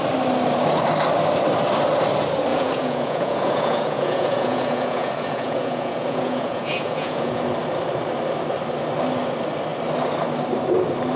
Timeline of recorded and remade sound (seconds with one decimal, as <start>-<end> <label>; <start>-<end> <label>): 0.0-2.5 recorded; 2.5-7.4 remade; 7.4-11.2 recorded